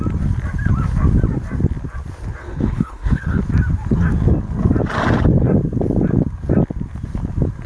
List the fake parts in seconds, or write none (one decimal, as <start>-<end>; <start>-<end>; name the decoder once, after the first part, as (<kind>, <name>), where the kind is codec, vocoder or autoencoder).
2.4-3.4 (codec, HILCodec)